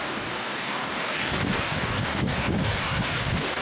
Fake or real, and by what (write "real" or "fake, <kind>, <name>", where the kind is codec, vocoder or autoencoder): fake, codec, DAC